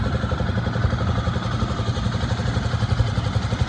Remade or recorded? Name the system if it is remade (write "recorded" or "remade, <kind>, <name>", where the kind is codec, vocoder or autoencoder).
recorded